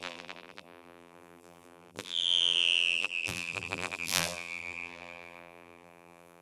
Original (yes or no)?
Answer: no